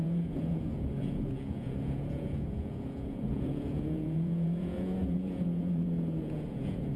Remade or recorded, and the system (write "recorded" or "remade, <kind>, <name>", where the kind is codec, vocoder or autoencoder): remade, vocoder, Vocos